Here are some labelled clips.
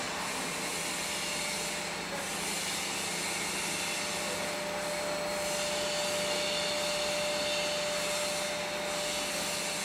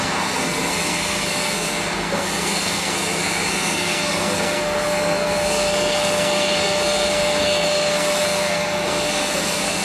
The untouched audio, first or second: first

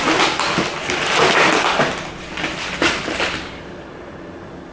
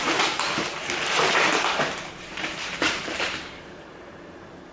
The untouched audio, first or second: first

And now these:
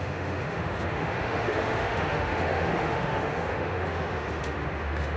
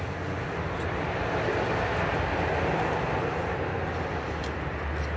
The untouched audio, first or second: second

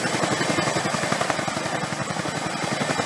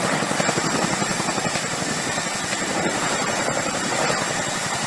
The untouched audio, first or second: first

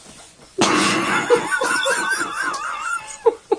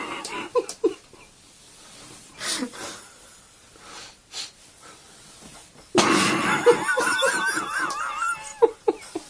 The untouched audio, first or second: second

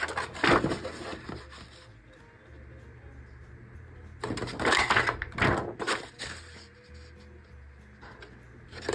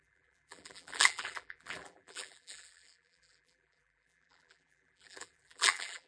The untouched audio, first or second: first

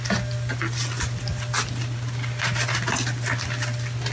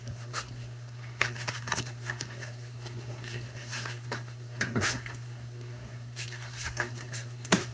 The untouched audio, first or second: first